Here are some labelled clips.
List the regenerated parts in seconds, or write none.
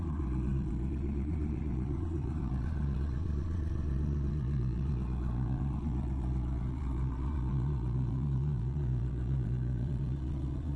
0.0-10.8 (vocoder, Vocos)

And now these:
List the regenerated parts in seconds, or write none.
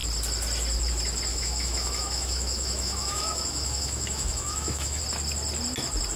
1.3-5.0 (autoencoder, DAC-VAE)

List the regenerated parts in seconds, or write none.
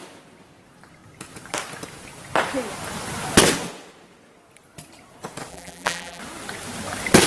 5.5-6.2 (vocoder, BigVGAN v2)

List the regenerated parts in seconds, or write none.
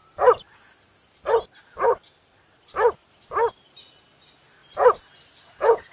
none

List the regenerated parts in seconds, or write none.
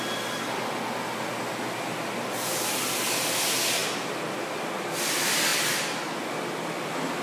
none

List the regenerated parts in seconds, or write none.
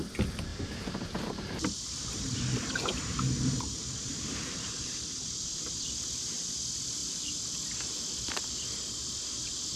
0.5-5.0 (vocoder, BigVGAN v2)